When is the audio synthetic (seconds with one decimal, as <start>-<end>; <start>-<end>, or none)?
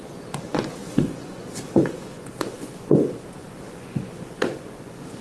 0.0-5.2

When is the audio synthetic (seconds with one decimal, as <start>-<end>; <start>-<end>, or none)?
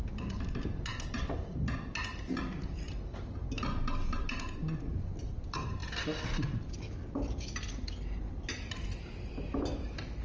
none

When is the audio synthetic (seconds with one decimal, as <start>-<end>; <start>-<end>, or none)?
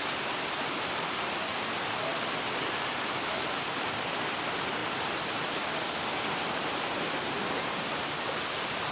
none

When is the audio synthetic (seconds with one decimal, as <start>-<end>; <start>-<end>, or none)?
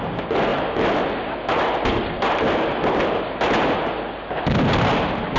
none